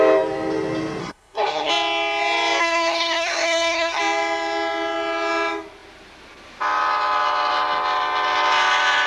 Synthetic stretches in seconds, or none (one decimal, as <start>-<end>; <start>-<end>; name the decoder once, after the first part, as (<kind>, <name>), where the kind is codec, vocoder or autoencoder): 1.0-1.7 (codec, SNAC); 2.6-4.0